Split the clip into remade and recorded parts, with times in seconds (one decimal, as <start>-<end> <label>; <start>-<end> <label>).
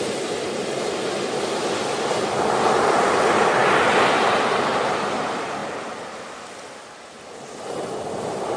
0.0-8.6 recorded